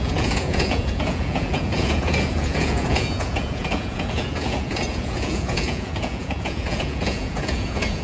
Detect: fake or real fake